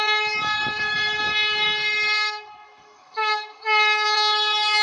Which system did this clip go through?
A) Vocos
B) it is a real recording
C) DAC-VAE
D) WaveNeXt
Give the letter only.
C